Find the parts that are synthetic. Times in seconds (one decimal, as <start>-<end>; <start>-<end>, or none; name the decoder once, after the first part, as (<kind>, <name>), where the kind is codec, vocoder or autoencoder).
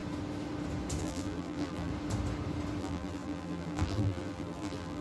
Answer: 1.0-1.9 (vocoder, BigVGAN v2); 2.8-5.0